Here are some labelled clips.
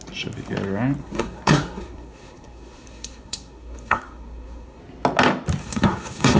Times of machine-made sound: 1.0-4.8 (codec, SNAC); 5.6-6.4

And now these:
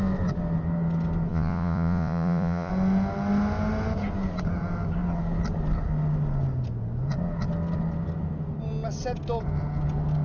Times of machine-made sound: 1.3-2.7 (vocoder, Vocos)

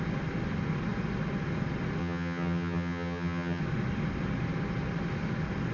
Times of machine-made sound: 2.0-3.6 (vocoder, HiFi-GAN)

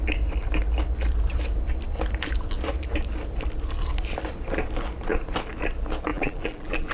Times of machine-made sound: 6.1-6.9 (vocoder, BigVGAN v2)